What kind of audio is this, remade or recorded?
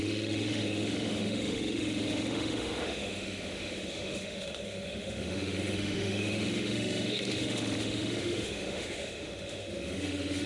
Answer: remade